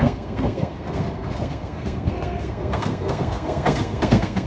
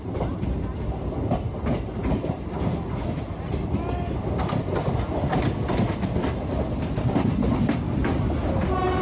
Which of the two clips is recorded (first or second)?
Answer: second